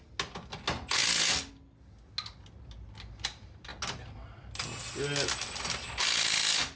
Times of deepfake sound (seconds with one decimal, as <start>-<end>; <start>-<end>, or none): none